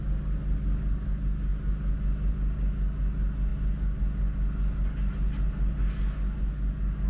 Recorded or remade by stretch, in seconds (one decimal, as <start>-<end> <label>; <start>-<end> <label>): 0.0-7.1 recorded